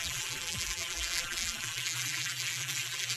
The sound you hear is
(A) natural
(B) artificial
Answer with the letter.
B